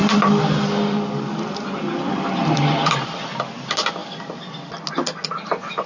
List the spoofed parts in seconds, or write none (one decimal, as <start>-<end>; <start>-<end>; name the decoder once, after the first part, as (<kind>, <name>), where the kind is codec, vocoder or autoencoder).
0.0-3.5 (vocoder, BigVGAN v2)